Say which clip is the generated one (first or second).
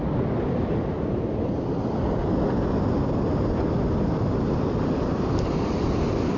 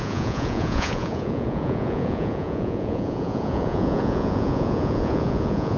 second